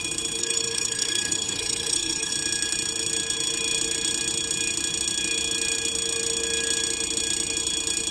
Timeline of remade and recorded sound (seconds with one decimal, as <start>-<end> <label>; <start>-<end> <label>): 0.0-0.4 recorded; 0.4-2.3 remade; 2.3-8.1 recorded